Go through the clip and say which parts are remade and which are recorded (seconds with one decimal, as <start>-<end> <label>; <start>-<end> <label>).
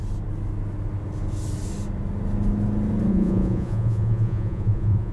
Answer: 0.0-3.1 recorded; 3.1-5.1 remade